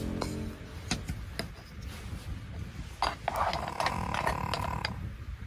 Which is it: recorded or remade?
recorded